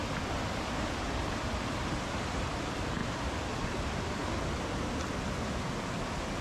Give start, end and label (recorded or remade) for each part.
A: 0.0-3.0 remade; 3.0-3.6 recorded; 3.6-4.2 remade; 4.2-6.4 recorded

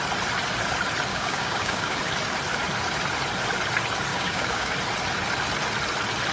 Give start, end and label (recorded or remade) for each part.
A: 0.0-1.1 recorded; 1.1-2.0 remade; 2.0-4.1 recorded; 4.1-4.7 remade; 4.7-6.3 recorded